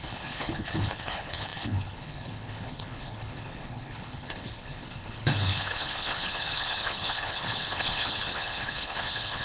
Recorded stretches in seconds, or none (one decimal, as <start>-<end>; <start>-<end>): none